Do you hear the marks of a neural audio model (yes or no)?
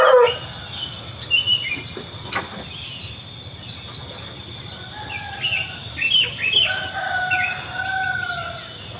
no